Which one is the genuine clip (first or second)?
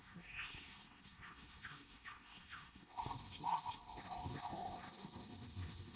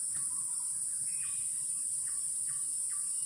second